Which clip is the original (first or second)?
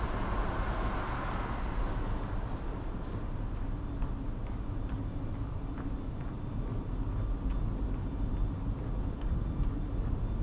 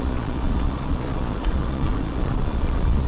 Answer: first